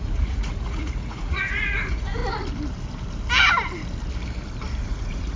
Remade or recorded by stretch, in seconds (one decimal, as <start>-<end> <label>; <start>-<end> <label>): 0.0-2.2 remade; 2.2-4.8 recorded; 4.8-5.4 remade